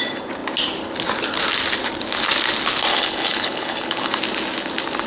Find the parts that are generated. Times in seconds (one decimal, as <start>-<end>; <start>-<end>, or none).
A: 2.9-4.1